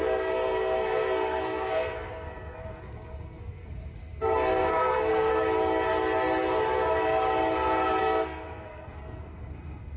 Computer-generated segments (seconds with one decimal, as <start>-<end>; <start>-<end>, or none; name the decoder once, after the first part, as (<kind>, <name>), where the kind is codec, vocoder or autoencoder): 0.0-5.3 (codec, SNAC); 8.0-10.0